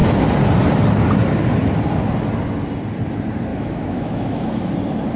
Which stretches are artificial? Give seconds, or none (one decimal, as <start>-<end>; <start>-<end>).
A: 3.5-4.7